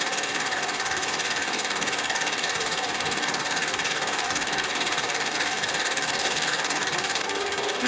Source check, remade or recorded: remade